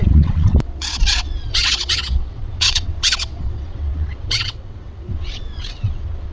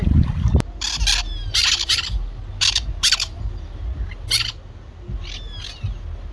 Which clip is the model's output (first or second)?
first